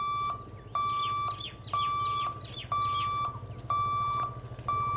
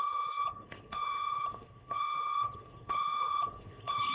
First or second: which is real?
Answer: first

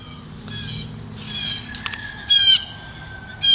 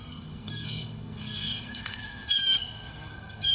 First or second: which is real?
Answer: first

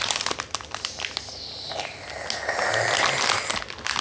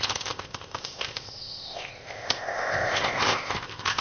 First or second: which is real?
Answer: first